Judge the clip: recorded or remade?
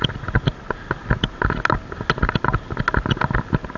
recorded